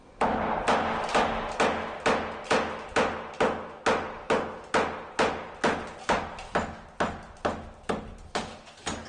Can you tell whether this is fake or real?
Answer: real